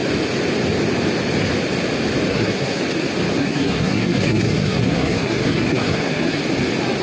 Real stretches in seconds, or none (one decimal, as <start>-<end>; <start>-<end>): 0.0-2.3; 2.8-3.4; 6.4-7.0